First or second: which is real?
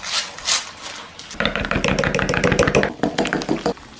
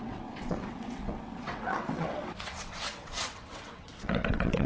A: first